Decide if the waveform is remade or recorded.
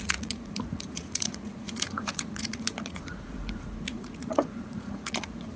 remade